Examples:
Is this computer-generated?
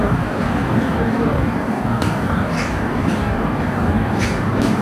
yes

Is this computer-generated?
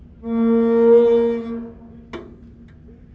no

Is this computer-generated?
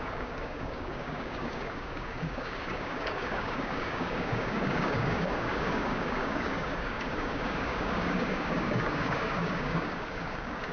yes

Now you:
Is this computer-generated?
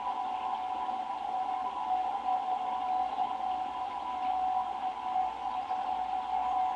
no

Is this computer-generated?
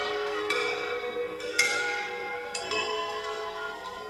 yes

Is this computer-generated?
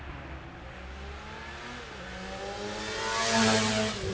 no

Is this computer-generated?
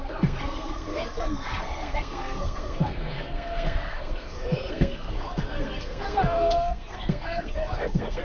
yes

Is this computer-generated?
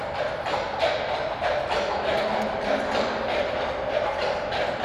no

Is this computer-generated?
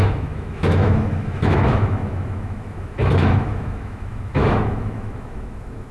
yes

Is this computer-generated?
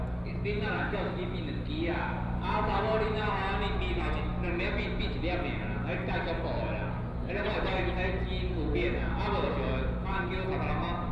no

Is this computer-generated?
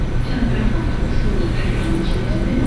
no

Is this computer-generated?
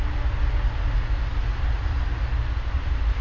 no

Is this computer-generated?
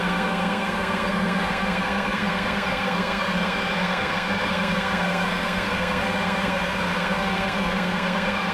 yes